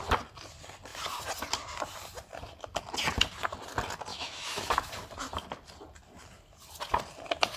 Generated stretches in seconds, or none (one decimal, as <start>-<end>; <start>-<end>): 4.1-4.9